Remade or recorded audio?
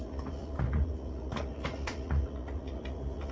remade